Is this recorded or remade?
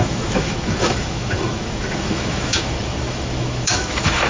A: remade